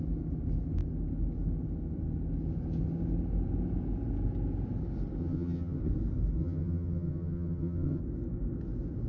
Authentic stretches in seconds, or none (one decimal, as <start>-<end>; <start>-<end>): 0.0-5.2; 5.8-6.4; 8.0-9.1